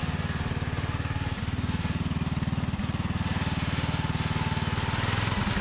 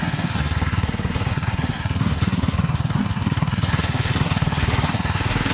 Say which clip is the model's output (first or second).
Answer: second